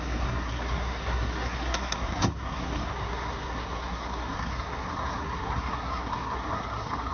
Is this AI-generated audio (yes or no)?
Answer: yes